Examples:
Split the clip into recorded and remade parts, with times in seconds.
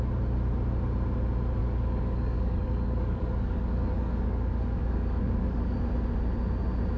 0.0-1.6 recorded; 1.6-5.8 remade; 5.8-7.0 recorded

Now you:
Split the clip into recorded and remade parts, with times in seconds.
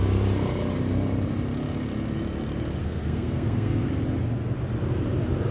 0.0-2.8 recorded; 2.8-3.9 remade; 3.9-5.5 recorded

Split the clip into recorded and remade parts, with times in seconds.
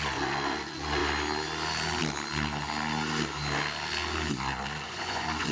0.0-1.0 remade; 1.0-4.3 recorded; 4.3-5.5 remade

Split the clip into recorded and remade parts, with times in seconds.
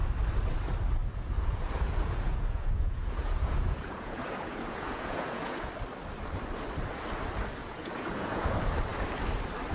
0.0-1.0 recorded; 1.0-5.7 remade; 5.7-7.6 recorded; 7.6-8.5 remade; 8.5-9.7 recorded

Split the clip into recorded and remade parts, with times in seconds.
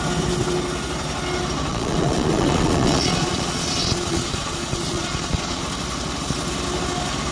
0.0-1.7 recorded; 1.7-5.6 remade; 5.6-7.3 recorded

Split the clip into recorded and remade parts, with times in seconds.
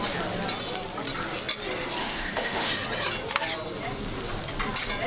0.0-2.0 recorded; 2.0-2.7 remade; 2.7-5.1 recorded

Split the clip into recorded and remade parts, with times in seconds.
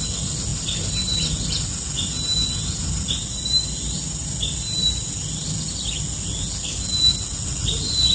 0.0-8.1 recorded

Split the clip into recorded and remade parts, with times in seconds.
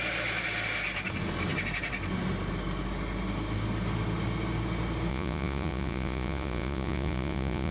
0.0-5.1 recorded; 5.1-7.7 remade